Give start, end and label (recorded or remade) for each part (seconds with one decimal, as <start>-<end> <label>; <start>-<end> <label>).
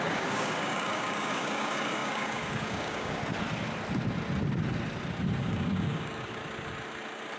0.0-3.2 remade; 3.2-5.4 recorded; 5.4-6.4 remade; 6.4-7.4 recorded